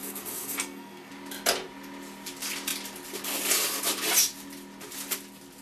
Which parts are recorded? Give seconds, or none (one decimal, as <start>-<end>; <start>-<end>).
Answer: 1.1-5.6